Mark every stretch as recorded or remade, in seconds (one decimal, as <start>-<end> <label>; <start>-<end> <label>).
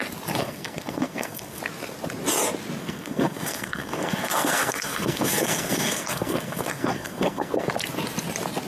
0.0-0.4 recorded; 0.4-1.6 remade; 1.6-2.8 recorded; 2.8-7.7 remade; 7.7-8.7 recorded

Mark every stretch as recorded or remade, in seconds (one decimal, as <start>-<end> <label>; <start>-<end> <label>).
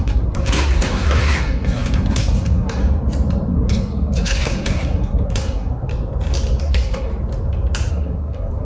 0.0-2.8 remade; 2.8-3.5 recorded; 3.5-5.9 remade; 5.9-6.6 recorded; 6.6-7.1 remade; 7.1-7.9 recorded; 7.9-8.6 remade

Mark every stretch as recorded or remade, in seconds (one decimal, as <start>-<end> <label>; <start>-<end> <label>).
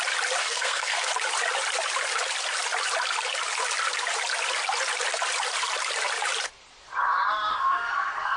0.0-0.4 recorded; 0.4-1.1 remade; 1.1-7.5 recorded; 7.5-8.4 remade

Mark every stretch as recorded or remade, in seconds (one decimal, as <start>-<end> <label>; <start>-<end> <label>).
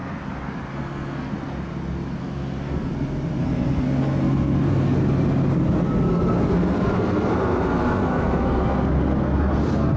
0.0-0.7 recorded; 0.7-1.3 remade; 1.3-2.2 recorded; 2.2-2.9 remade; 2.9-3.4 recorded; 3.4-5.0 remade; 5.0-6.1 recorded; 6.1-10.0 remade